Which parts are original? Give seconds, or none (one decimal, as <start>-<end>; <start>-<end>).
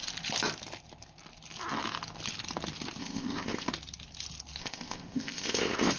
0.0-3.0; 3.7-4.6